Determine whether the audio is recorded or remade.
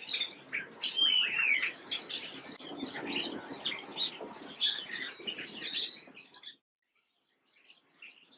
recorded